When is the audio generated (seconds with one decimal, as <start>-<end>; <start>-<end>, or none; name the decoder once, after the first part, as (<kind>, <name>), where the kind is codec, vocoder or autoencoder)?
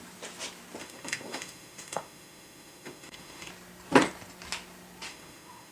0.8-3.5 (autoencoder, DAC-VAE); 5.1-5.7